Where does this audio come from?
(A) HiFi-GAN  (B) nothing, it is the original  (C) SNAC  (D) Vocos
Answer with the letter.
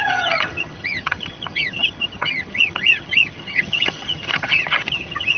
A